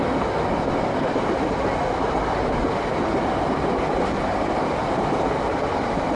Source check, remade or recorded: recorded